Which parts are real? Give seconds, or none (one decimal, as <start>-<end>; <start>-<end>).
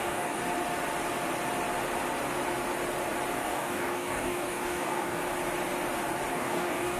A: 0.4-3.4; 5.2-6.3